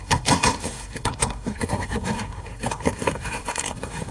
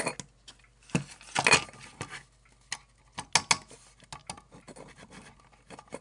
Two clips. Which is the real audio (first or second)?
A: second